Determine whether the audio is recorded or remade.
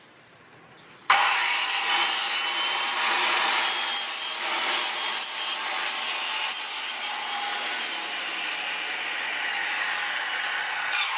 recorded